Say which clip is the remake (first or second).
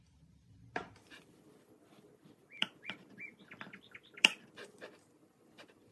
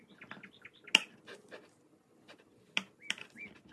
first